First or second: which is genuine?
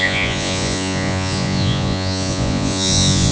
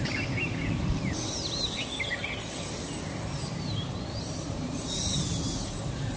second